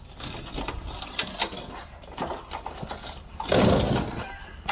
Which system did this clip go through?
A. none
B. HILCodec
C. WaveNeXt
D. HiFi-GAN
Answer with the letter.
A